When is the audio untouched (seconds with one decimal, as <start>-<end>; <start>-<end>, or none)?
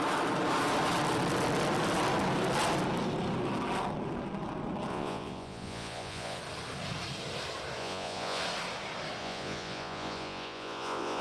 0.0-4.9; 6.4-7.8; 8.4-9.2